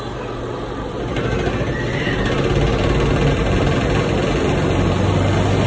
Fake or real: real